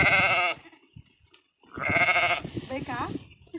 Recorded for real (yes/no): yes